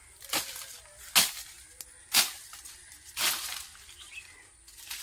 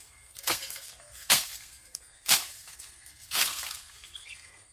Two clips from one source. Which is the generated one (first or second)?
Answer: second